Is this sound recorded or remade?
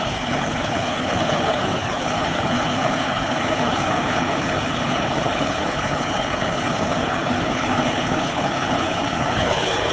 remade